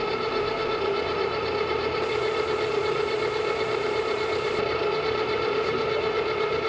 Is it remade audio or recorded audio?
remade